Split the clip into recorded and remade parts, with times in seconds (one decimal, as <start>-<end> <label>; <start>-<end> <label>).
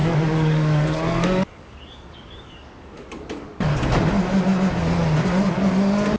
0.0-3.7 remade; 3.7-6.2 recorded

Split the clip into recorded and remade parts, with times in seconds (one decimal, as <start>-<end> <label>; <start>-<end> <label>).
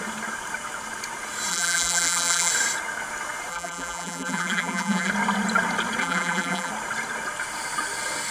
0.0-1.5 recorded; 1.5-2.5 remade; 2.5-3.5 recorded; 3.5-5.1 remade; 5.1-6.0 recorded; 6.0-6.7 remade; 6.7-8.3 recorded